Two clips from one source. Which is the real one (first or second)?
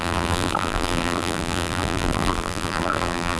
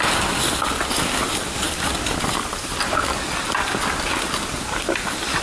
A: second